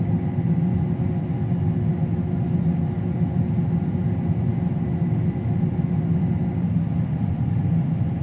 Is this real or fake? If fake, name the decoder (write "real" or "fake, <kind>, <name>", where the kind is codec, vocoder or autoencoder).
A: real